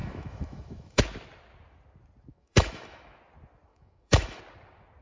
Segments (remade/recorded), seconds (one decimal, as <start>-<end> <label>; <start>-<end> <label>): 0.0-1.0 remade; 1.0-2.3 recorded; 2.3-3.2 remade; 3.2-3.7 recorded; 3.7-4.4 remade; 4.4-5.0 recorded

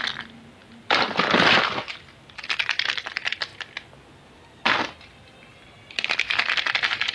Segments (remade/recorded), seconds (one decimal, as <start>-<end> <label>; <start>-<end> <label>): 0.0-7.1 recorded

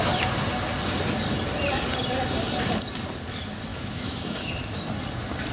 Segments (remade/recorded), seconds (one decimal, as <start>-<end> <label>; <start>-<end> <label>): 0.0-3.7 recorded; 3.7-4.5 remade; 4.5-5.5 recorded

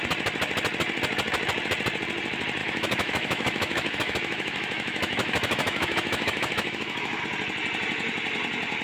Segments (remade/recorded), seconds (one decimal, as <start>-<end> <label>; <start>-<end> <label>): 0.0-2.6 recorded; 2.6-7.2 remade; 7.2-8.8 recorded

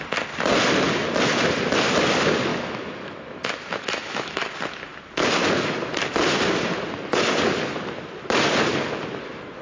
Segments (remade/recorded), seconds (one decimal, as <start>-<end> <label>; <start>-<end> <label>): 0.0-2.5 recorded; 2.5-4.5 remade; 4.5-9.6 recorded